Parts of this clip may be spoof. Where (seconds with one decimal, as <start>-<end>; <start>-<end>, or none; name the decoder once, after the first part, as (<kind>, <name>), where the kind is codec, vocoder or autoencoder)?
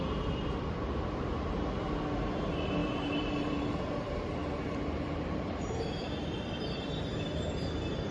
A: 2.8-3.6 (vocoder, BigVGAN v2); 4.4-6.1